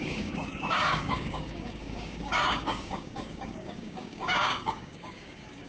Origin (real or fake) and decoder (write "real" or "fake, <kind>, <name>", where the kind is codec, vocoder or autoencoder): fake, codec, DAC